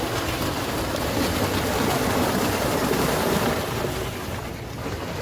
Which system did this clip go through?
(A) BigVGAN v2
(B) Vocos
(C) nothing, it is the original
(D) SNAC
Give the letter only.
C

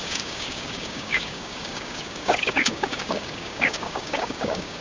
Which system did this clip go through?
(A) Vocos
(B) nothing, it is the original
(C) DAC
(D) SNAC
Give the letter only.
C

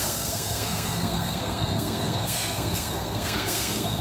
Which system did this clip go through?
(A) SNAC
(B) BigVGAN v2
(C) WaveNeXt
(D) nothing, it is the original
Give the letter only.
A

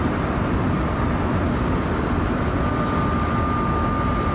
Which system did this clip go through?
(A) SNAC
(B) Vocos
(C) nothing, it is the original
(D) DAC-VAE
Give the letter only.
C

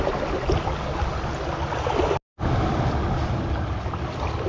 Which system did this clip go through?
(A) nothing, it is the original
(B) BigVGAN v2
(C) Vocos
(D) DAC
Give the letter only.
A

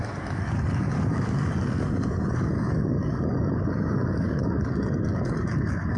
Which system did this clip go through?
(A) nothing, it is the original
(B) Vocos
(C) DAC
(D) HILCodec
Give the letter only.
C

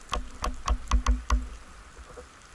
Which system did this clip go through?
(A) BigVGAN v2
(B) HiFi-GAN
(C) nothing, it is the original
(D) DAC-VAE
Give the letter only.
C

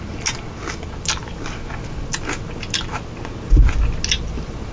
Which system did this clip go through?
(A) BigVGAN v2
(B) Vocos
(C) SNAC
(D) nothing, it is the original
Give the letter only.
D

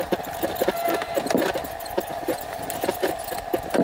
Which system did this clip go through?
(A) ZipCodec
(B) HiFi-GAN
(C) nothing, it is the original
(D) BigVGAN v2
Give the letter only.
C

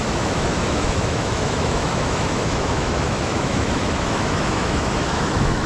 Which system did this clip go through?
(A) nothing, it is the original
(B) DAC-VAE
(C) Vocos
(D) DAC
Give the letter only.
B